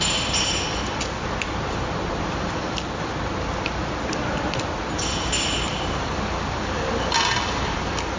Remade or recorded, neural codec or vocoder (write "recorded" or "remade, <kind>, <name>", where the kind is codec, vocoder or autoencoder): recorded